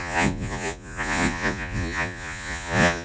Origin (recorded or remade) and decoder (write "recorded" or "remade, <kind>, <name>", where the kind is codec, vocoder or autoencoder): remade, vocoder, Vocos